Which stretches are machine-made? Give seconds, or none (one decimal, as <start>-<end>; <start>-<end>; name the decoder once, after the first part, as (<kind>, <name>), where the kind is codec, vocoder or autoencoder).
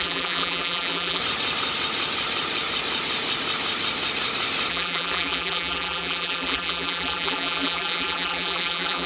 0.0-1.2 (vocoder, BigVGAN v2); 4.7-9.1